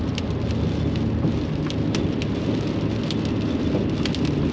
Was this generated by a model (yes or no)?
no